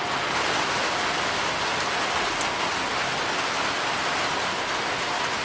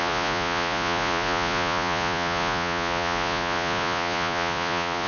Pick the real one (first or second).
first